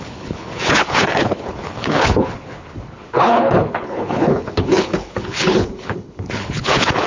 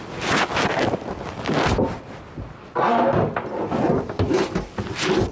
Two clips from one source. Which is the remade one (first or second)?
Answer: first